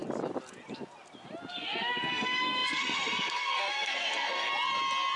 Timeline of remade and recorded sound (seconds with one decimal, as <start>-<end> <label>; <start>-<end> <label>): 0.0-1.5 recorded; 1.5-4.5 remade; 4.5-5.2 recorded